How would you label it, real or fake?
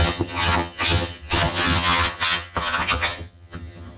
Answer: fake